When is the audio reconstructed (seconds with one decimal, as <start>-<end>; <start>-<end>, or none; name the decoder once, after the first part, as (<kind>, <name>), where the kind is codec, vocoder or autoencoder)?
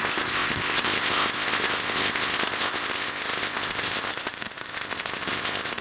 0.0-5.8 (codec, ZipCodec)